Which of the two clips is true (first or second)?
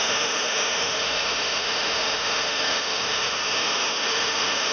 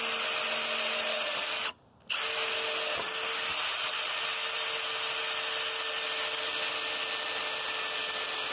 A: second